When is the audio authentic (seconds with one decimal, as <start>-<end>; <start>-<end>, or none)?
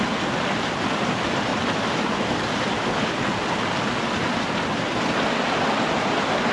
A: 0.0-6.5